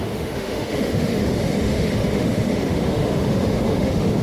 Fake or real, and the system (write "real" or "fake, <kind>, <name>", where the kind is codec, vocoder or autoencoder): fake, autoencoder, DAC-VAE